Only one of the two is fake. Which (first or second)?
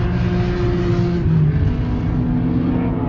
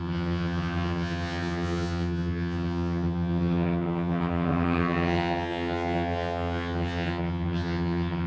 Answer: second